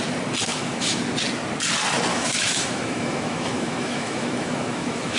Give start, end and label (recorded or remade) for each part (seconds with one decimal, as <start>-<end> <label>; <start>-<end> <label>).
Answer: 0.0-0.5 recorded; 0.5-1.0 remade; 1.0-2.1 recorded; 2.1-5.2 remade